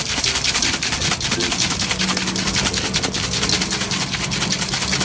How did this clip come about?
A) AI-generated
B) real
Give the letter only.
B